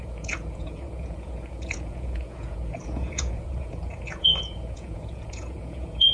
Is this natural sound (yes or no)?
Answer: no